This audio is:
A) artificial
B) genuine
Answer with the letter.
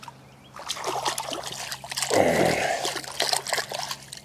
B